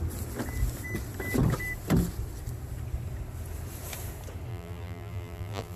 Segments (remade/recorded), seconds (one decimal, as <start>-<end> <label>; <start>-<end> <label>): 0.0-4.5 recorded; 4.5-5.8 remade